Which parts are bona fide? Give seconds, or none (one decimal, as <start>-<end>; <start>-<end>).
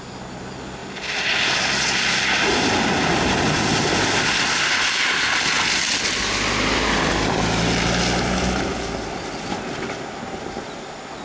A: 0.0-11.2